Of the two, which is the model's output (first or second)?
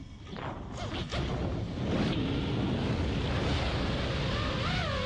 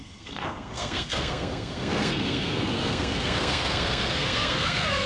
second